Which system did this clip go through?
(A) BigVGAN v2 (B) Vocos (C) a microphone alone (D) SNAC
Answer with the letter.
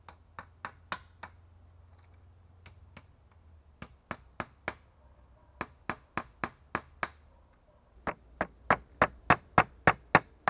C